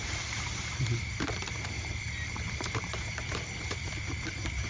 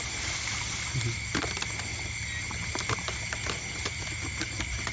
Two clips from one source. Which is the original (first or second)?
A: second